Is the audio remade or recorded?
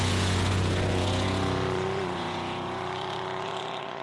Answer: remade